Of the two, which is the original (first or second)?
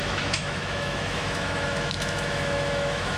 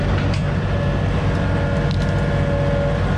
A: second